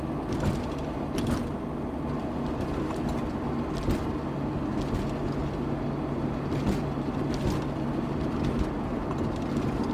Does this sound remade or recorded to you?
recorded